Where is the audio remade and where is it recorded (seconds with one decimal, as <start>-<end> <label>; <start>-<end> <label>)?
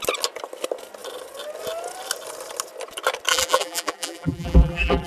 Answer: 0.0-3.3 recorded; 3.3-5.1 remade